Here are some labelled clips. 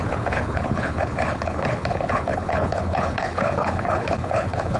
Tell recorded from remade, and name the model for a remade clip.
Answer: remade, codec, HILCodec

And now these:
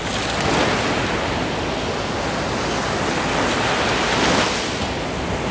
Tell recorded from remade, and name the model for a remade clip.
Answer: recorded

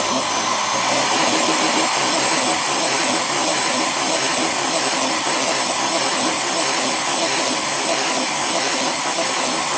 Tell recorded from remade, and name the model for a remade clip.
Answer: recorded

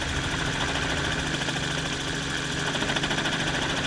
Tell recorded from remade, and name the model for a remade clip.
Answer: recorded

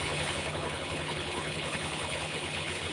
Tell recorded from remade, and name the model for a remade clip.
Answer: remade, codec, HILCodec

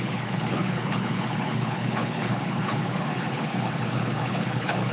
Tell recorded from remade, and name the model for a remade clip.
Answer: remade, codec, HILCodec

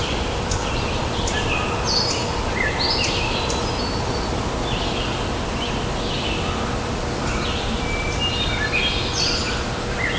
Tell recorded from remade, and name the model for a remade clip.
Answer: recorded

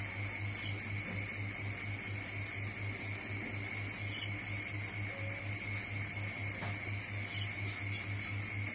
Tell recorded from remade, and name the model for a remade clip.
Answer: recorded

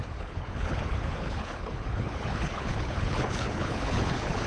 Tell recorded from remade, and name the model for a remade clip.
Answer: remade, codec, HILCodec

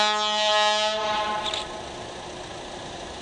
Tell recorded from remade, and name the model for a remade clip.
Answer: recorded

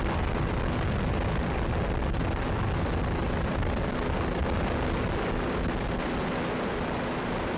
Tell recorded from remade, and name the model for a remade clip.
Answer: recorded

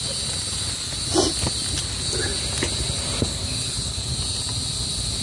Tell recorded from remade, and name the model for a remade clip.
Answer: recorded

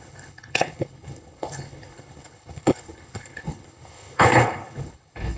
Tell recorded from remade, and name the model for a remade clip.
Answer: remade, codec, HILCodec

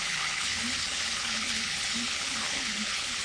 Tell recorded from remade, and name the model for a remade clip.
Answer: remade, codec, HILCodec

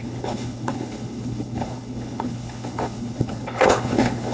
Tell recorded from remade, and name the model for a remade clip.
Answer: remade, codec, HILCodec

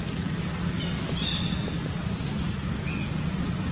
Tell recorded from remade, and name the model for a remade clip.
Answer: recorded